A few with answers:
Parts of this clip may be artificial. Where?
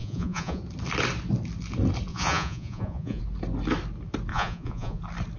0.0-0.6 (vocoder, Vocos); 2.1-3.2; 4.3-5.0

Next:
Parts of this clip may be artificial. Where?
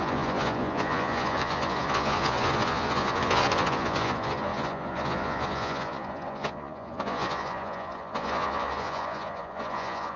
0.0-10.2 (vocoder, Vocos)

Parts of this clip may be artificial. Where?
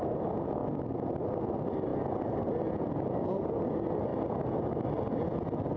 none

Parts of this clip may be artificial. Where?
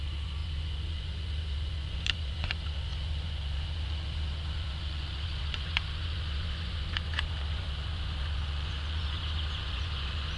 0.0-10.4 (vocoder, Vocos)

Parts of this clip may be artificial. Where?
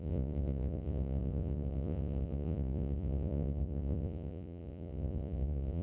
0.0-5.8 (vocoder, Vocos)